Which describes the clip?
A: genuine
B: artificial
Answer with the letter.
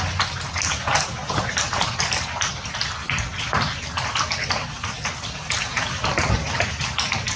A